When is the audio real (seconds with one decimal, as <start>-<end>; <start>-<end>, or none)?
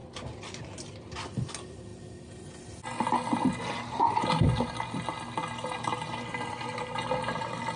0.0-7.8